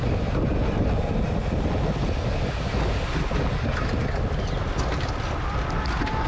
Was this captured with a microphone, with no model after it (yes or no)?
yes